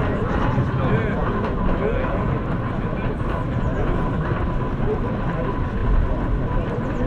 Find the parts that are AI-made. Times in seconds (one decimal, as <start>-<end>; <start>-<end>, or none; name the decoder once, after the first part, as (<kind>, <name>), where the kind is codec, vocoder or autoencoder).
none

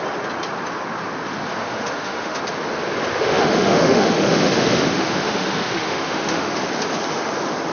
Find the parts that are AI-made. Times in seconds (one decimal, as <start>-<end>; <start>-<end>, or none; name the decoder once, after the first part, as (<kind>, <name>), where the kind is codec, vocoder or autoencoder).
1.6-2.4 (autoencoder, DAC-VAE); 3.1-6.6